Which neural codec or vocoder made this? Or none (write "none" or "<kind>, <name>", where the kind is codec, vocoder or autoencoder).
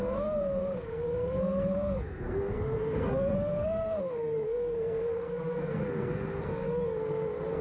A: codec, SNAC